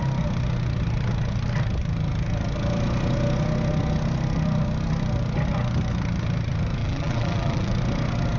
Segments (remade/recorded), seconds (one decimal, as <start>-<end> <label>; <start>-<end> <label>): 0.0-6.8 recorded; 6.8-7.7 remade; 7.7-8.4 recorded